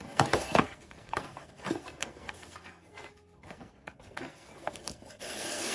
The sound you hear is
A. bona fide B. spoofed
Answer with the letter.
B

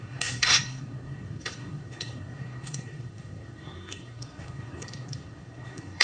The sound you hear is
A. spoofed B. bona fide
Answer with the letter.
A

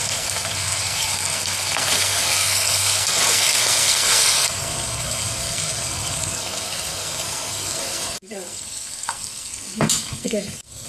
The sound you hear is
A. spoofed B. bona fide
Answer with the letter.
A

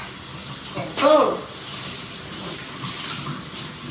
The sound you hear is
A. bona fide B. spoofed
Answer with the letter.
A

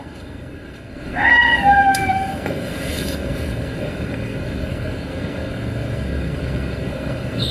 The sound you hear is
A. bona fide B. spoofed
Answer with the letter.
B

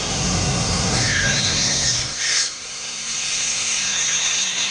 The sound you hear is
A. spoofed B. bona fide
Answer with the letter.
A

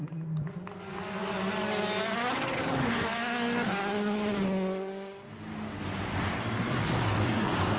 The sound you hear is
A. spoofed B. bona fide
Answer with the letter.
B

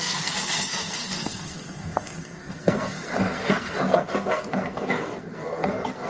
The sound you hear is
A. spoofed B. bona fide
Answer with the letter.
A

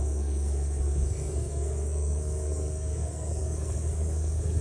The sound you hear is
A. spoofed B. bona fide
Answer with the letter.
A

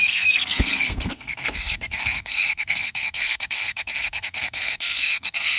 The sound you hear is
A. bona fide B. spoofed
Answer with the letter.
B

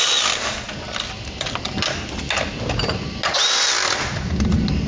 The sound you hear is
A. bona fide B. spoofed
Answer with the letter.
A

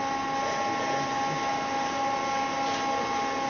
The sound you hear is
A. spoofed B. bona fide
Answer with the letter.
B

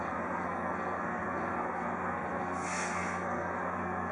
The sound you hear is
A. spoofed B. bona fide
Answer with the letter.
A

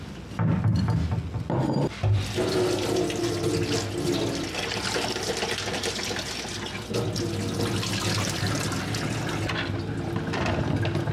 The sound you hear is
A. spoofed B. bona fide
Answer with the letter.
B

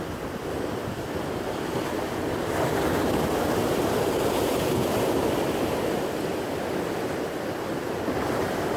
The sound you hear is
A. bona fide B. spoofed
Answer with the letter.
A